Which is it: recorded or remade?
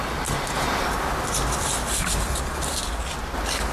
recorded